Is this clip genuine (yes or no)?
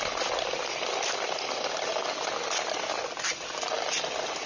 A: yes